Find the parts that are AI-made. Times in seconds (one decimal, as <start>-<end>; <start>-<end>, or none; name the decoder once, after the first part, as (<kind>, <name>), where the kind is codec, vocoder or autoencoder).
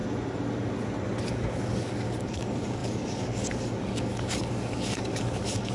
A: 1.3-5.7 (codec, DAC)